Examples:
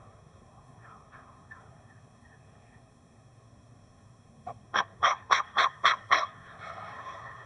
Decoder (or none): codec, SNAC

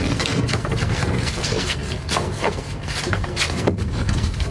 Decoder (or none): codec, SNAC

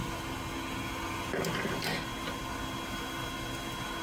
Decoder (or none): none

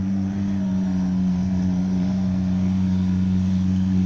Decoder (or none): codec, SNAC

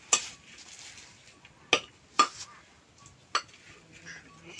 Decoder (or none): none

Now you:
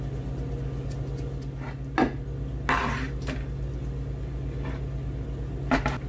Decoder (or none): none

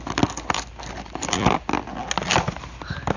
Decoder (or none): none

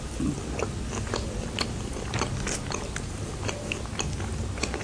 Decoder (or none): none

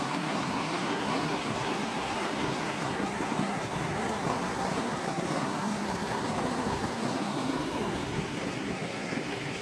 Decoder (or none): codec, SNAC